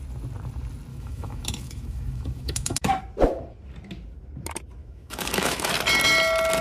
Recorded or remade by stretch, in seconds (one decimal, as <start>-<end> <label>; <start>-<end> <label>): 0.0-0.9 recorded; 0.9-3.0 remade; 3.0-4.8 recorded; 4.8-5.7 remade; 5.7-6.6 recorded